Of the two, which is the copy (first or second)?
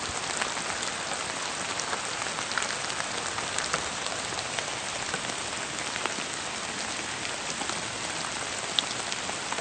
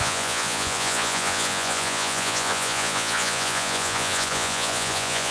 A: second